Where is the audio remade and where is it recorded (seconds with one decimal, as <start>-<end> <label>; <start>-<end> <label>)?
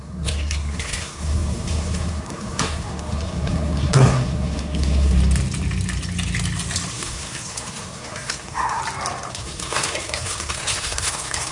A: 0.0-5.2 remade; 5.2-6.9 recorded; 6.9-8.8 remade; 8.8-9.3 recorded; 9.3-11.5 remade